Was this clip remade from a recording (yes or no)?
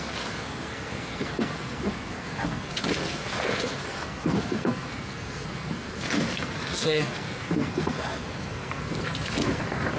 yes